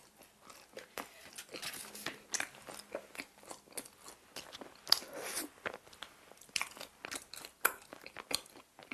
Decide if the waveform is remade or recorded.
recorded